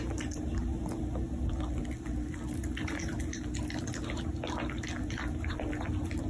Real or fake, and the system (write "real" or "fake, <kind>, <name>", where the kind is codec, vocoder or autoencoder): real